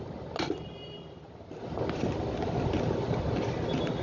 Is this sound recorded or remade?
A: recorded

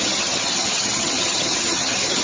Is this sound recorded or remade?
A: remade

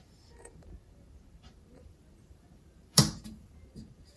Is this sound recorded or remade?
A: remade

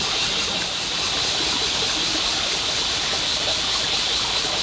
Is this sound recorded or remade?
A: recorded